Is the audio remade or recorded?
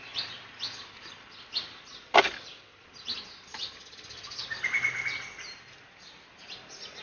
recorded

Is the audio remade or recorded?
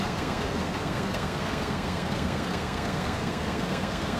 remade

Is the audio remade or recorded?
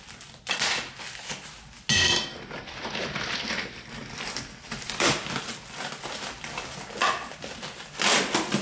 recorded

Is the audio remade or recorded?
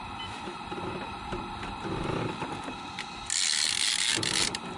recorded